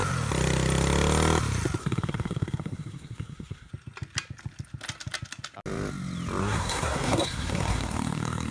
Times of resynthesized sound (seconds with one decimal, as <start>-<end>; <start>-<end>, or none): 1.8-3.7; 6.4-8.5